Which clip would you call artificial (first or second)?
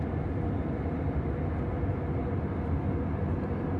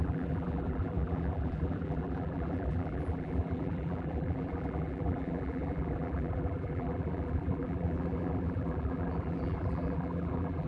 second